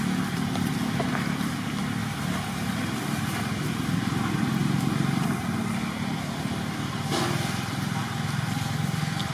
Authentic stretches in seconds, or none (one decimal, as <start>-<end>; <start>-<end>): 2.0-2.7; 4.6-5.2